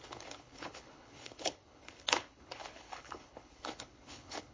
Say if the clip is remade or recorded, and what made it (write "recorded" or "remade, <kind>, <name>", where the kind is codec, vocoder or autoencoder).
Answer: remade, codec, HILCodec